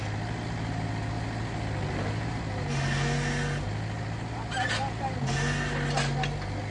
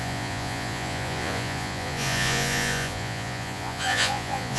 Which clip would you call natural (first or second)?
first